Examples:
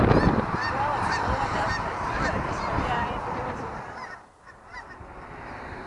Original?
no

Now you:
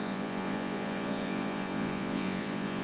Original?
no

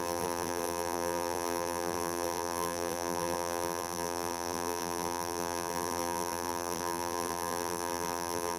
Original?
no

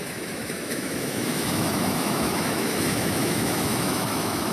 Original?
no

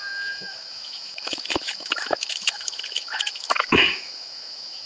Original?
no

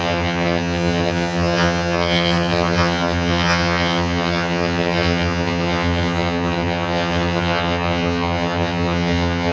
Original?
no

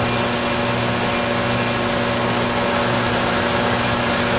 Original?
yes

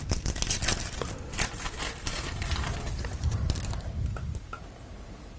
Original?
yes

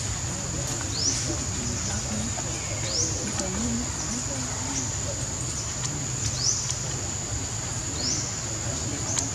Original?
yes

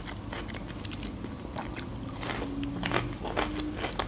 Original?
yes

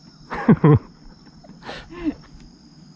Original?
yes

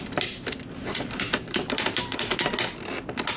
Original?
no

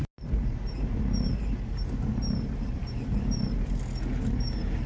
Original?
yes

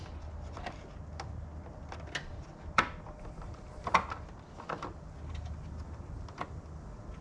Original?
yes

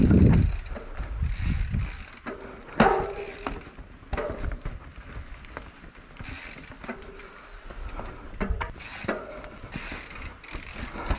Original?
yes